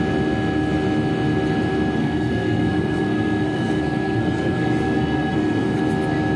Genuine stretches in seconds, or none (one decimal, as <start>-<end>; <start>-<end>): 0.0-2.0; 5.8-6.4